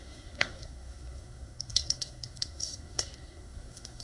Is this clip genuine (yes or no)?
no